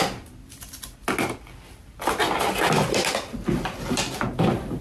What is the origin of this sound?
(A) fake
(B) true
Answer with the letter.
B